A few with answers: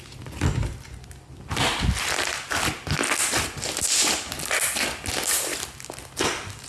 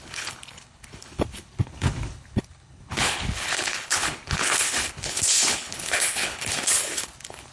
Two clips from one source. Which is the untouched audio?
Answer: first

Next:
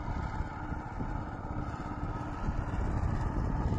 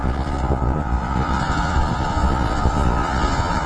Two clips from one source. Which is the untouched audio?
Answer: first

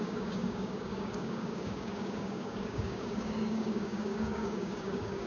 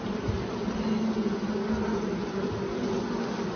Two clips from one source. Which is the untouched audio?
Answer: second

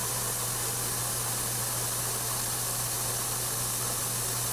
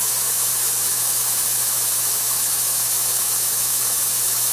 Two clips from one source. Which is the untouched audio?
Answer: first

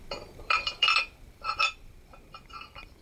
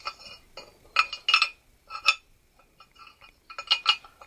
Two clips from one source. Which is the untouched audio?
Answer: second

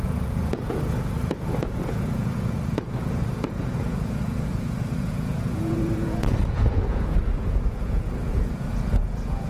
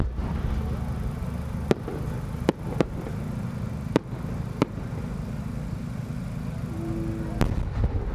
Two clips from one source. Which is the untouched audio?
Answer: second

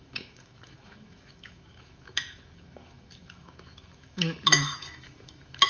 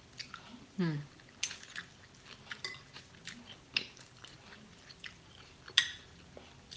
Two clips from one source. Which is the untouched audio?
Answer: second